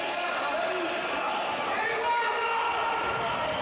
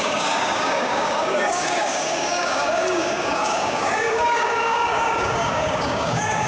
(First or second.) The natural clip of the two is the first